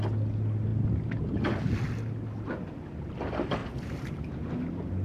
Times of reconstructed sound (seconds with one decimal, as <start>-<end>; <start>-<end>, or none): 3.6-4.3